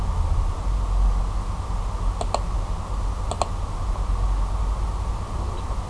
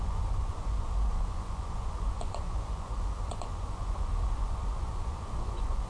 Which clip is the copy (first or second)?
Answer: second